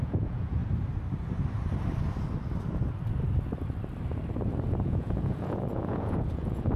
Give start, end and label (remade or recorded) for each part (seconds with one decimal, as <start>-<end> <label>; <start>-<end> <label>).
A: 0.0-0.6 remade; 0.6-4.7 recorded; 4.7-6.8 remade